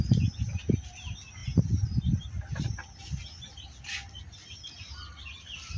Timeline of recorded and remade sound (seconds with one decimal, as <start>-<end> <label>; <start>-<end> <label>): 0.0-5.8 recorded

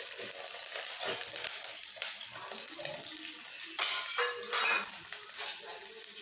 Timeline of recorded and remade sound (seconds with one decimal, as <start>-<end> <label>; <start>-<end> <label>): 0.0-2.4 remade; 2.4-5.3 recorded; 5.3-6.2 remade

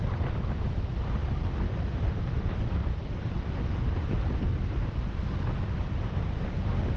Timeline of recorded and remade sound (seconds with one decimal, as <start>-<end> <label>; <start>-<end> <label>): 0.0-2.8 recorded; 2.8-7.0 remade

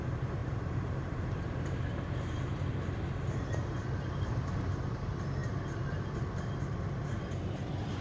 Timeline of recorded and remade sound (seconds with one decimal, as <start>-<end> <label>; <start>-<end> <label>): 0.0-0.4 recorded; 0.4-2.6 remade; 2.6-8.0 recorded